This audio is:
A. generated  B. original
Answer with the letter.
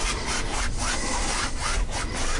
B